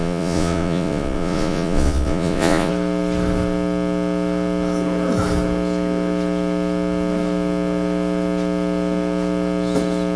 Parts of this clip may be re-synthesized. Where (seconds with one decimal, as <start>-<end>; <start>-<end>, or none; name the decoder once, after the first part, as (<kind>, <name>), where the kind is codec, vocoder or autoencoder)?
0.0-2.7 (vocoder, Vocos)